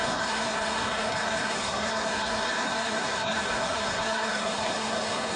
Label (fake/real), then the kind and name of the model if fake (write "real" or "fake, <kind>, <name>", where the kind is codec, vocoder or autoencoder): fake, codec, SNAC